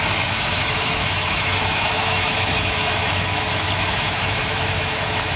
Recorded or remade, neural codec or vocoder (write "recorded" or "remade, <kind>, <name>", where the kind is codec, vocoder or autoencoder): remade, autoencoder, DAC-VAE